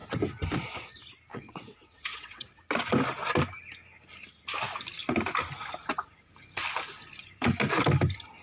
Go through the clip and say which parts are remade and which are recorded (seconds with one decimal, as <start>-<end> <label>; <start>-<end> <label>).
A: 0.0-1.3 recorded; 1.3-2.6 remade; 2.6-8.4 recorded